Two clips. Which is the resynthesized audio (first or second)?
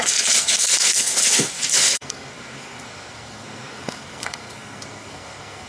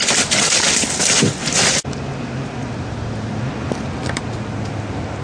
first